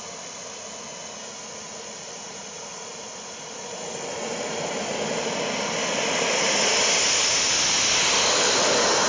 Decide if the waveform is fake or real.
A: real